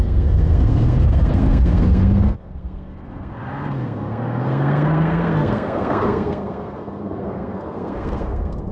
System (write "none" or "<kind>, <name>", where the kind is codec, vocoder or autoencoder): codec, SNAC